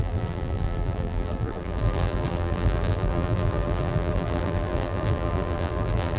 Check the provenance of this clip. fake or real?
fake